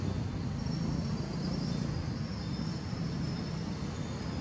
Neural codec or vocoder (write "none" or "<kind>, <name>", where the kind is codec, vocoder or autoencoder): none